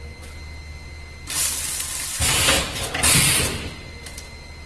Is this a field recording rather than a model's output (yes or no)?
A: yes